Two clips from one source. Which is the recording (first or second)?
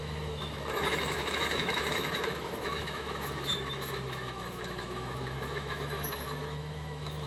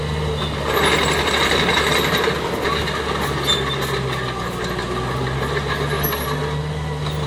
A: second